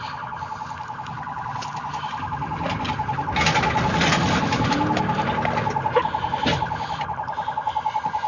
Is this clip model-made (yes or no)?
no